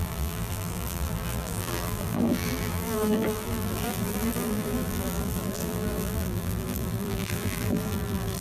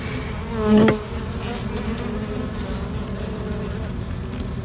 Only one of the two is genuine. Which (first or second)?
second